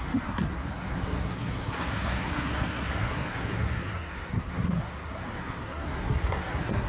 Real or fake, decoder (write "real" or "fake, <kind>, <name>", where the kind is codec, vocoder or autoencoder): fake, codec, SNAC